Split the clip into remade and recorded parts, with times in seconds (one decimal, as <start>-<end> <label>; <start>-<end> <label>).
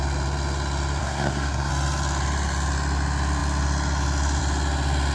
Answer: 0.0-1.0 recorded; 1.0-1.7 remade; 1.7-5.1 recorded